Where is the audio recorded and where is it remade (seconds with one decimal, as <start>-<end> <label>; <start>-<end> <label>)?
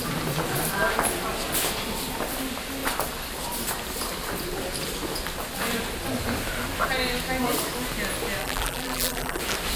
0.0-8.4 recorded; 8.4-9.4 remade; 9.4-9.8 recorded